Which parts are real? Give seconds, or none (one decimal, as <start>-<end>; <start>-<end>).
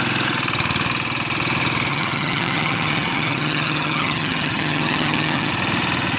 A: 0.0-1.9; 5.5-6.2